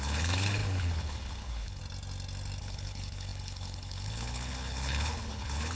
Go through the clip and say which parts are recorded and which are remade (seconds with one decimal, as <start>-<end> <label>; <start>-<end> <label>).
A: 0.0-1.8 remade; 1.8-2.6 recorded; 2.6-5.8 remade